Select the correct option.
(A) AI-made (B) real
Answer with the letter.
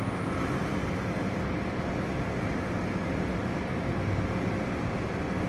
B